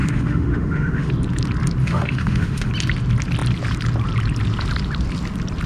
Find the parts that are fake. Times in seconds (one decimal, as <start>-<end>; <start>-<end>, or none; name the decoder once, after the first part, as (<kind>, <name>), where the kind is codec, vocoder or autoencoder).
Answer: 0.0-1.1 (autoencoder, DAC-VAE); 1.8-2.7